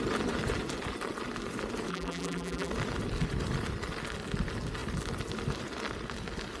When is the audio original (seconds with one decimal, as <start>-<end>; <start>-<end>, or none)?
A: 0.0-1.9; 2.7-6.6